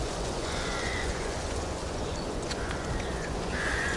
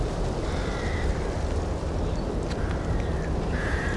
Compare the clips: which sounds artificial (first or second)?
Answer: first